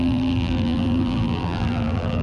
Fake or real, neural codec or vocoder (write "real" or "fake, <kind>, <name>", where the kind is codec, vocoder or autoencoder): fake, vocoder, BigVGAN v2